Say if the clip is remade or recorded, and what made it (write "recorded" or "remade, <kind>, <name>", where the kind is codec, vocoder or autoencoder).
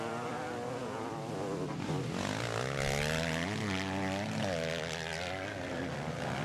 recorded